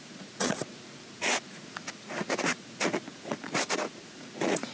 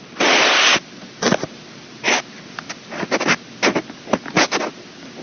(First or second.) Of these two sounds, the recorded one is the second